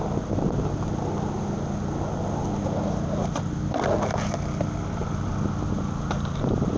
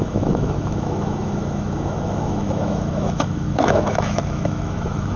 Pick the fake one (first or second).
second